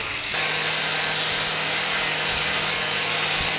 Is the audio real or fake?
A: real